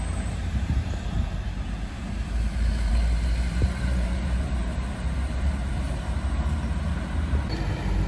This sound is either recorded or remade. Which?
remade